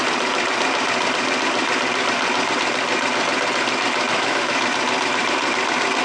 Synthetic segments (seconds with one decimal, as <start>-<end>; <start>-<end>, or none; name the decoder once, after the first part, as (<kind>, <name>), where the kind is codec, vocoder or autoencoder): 4.1-4.6 (autoencoder, DAC-VAE)